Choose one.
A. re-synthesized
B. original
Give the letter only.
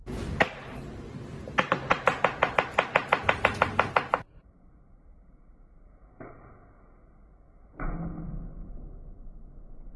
B